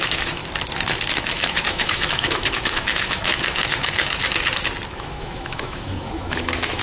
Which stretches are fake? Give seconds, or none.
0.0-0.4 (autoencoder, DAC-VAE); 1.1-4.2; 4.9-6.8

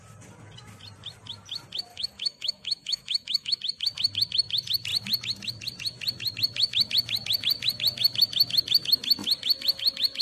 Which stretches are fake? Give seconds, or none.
1.9-3.6 (autoencoder, DAC-VAE)